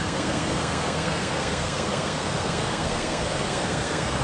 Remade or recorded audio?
remade